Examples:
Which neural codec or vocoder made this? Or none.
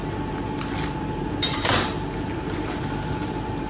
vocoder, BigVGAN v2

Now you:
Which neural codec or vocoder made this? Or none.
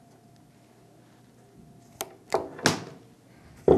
none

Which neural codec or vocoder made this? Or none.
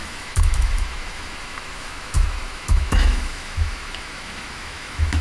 autoencoder, DAC-VAE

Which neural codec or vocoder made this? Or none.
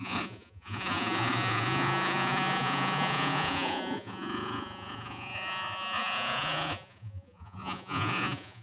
vocoder, Vocos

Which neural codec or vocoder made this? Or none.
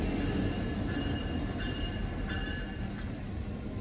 none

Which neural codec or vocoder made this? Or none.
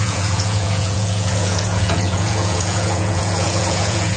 vocoder, Vocos